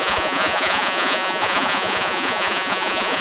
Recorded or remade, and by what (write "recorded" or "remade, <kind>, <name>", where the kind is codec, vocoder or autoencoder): remade, vocoder, Vocos